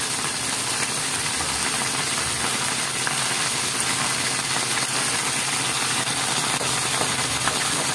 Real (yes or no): yes